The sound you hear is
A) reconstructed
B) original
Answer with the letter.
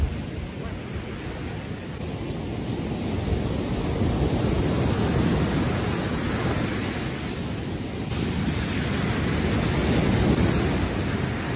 B